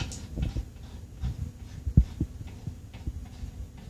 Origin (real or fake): real